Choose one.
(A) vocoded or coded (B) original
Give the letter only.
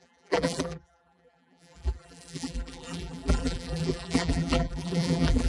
A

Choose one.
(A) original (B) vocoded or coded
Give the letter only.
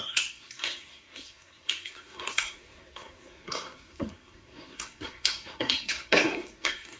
B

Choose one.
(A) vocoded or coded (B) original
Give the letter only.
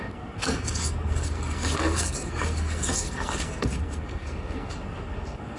A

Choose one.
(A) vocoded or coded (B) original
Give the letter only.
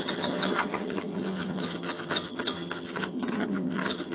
A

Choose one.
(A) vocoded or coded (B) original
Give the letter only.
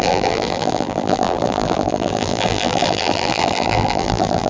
A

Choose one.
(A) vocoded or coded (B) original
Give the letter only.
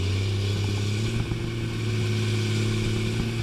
B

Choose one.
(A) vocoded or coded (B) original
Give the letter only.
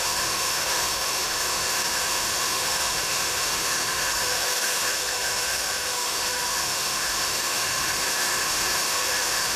A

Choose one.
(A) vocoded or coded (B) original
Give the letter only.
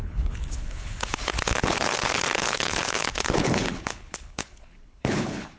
A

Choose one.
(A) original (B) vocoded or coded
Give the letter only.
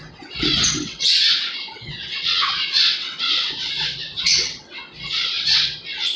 B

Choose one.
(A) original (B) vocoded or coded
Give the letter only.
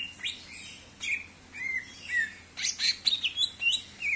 A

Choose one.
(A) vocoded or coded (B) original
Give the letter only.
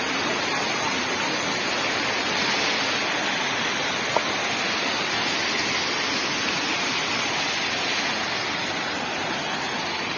B